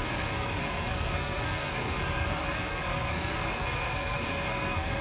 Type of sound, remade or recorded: remade